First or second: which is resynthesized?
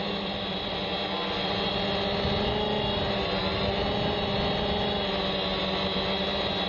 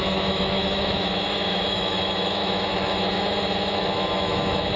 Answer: second